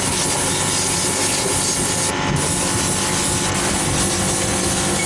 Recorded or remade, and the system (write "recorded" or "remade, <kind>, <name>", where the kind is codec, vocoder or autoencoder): recorded